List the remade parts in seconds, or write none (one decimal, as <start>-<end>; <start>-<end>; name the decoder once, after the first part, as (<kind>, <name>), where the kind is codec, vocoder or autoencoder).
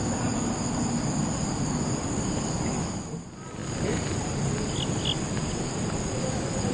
none